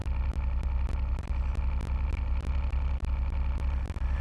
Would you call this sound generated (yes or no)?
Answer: no